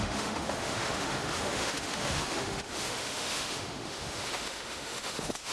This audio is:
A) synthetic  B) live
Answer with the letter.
A